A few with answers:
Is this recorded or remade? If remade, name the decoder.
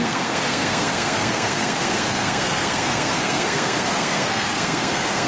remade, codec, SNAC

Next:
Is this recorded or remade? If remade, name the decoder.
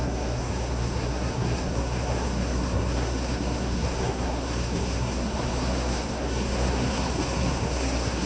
remade, codec, SNAC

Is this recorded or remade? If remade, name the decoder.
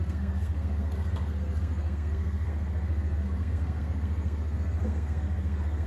remade, codec, SNAC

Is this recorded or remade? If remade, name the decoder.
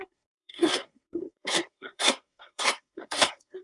remade, codec, SNAC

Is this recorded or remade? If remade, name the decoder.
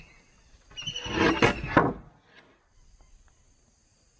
recorded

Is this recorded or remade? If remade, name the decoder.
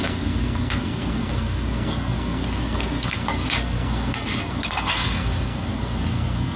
remade, codec, SNAC